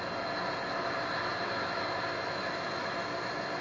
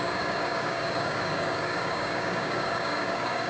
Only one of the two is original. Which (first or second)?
first